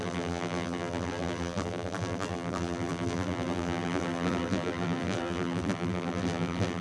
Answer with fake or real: fake